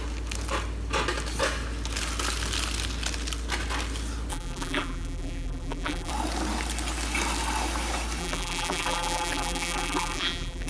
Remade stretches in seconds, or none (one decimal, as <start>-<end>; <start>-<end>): 4.3-6.1; 8.2-10.7